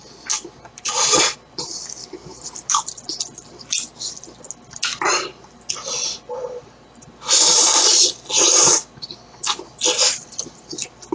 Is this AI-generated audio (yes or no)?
no